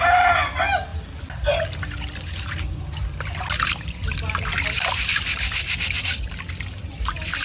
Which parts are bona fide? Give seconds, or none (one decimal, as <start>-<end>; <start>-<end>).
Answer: 0.0-7.4